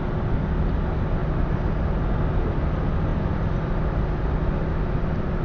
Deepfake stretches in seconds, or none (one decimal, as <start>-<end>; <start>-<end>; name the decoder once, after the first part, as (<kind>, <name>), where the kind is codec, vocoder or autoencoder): none